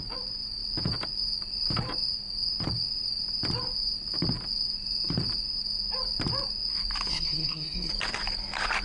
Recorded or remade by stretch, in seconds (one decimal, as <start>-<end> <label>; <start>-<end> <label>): 0.0-7.1 recorded; 7.1-7.9 remade; 7.9-8.8 recorded